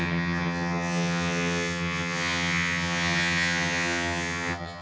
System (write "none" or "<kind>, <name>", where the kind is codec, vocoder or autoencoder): vocoder, HiFi-GAN